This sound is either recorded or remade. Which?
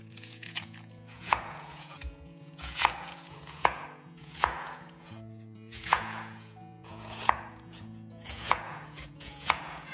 remade